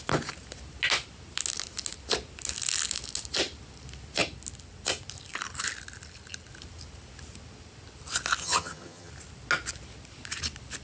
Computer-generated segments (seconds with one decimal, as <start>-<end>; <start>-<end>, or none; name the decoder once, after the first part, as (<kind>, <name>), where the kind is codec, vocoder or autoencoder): 8.4-9.1 (vocoder, HiFi-GAN)